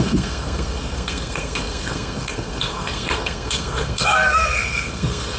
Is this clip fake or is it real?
fake